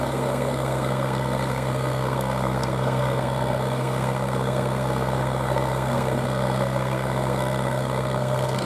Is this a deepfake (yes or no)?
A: yes